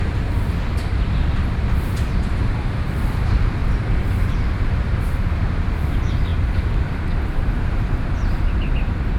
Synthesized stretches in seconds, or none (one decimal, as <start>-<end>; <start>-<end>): 0.0-9.2